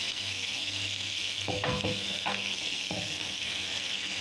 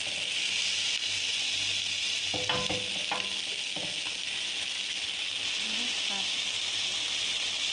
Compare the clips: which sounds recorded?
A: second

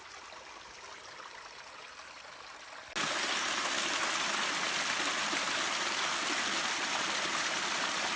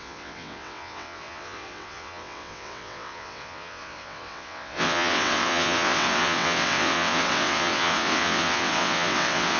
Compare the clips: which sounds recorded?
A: first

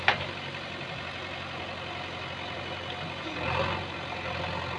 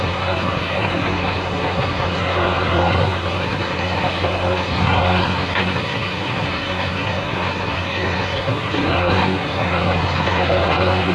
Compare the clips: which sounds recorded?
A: first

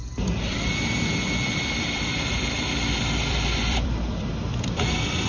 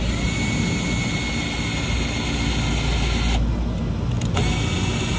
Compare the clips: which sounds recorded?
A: second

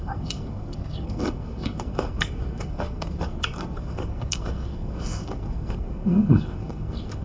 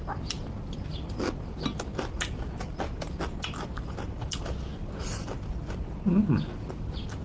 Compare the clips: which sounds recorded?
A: second